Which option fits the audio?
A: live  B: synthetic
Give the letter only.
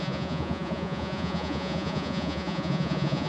B